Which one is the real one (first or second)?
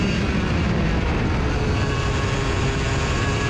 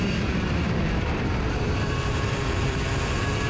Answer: first